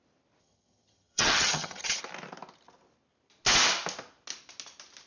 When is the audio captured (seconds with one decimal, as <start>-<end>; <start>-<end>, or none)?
0.0-0.4; 2.0-5.1